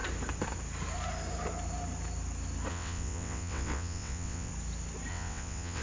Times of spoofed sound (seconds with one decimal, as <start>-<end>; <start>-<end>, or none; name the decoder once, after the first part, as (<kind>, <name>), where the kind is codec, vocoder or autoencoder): 2.7-4.5 (vocoder, WaveNeXt); 5.1-5.8